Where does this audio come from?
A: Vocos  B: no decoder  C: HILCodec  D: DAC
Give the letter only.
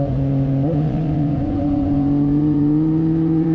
A